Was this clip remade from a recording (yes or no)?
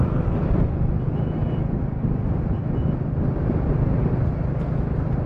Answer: no